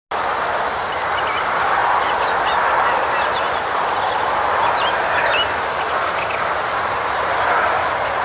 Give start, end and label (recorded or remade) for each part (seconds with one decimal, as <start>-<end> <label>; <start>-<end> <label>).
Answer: 0.0-8.2 recorded